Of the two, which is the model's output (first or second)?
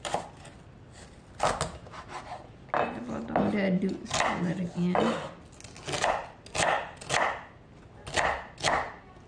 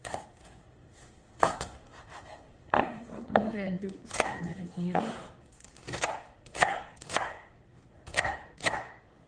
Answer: second